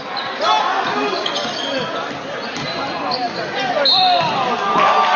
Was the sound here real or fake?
real